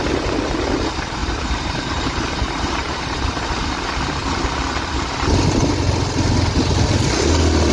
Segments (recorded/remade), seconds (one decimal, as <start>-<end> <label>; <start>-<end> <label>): 0.0-1.2 recorded; 1.2-3.7 remade; 3.7-7.7 recorded